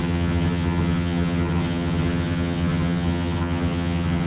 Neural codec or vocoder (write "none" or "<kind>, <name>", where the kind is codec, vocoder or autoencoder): vocoder, HiFi-GAN